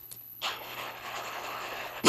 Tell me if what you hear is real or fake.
fake